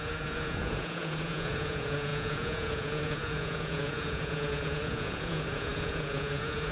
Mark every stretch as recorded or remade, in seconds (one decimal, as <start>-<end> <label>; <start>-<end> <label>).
0.0-6.7 remade